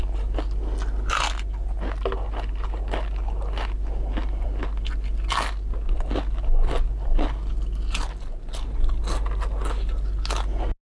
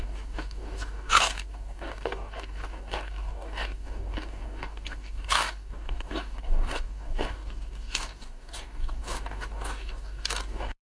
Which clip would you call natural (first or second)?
first